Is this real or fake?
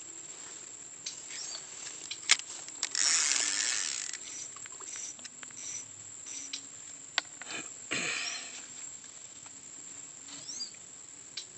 real